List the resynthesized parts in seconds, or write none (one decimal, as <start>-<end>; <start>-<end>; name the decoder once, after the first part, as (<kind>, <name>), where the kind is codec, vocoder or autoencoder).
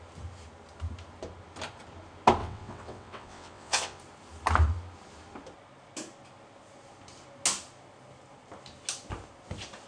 2.4-4.0 (vocoder, WaveNeXt)